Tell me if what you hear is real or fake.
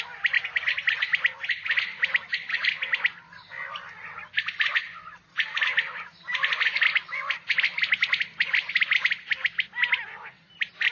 real